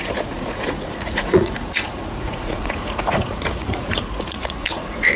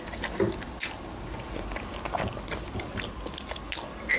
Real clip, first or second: second